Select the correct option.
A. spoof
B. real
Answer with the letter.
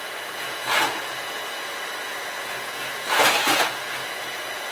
A